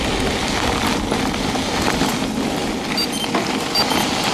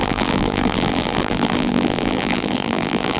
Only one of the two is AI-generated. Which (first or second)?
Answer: second